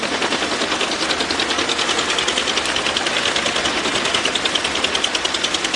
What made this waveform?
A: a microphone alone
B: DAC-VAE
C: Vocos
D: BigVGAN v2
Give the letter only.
A